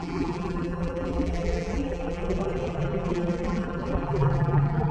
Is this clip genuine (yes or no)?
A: no